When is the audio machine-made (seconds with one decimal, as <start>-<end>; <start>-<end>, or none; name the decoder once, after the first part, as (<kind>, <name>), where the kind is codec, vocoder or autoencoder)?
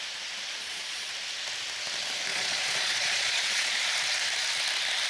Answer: 0.6-1.1 (vocoder, Vocos); 2.3-3.8